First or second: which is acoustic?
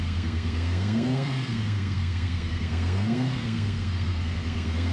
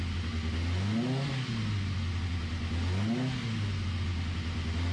second